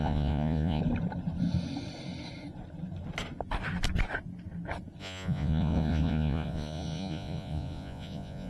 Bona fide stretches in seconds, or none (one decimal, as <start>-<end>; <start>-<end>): 0.8-5.0